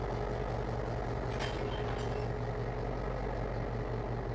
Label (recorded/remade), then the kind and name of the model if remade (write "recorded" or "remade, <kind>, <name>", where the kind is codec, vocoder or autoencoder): recorded